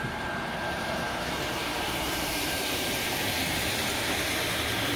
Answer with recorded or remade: remade